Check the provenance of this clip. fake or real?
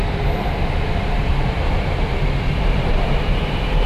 fake